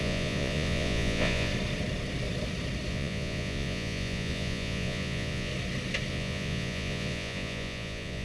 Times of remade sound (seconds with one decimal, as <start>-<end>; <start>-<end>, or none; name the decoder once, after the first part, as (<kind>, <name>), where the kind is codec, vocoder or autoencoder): 0.0-1.5 (vocoder, Vocos); 2.9-5.5; 6.1-8.2